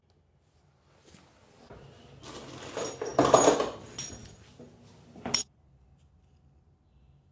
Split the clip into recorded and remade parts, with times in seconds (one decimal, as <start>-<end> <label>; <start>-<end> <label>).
0.0-7.3 recorded